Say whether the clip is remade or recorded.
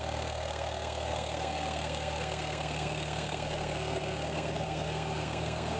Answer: remade